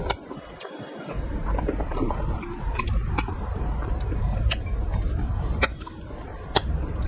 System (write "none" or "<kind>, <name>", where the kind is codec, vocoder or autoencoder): vocoder, BigVGAN v2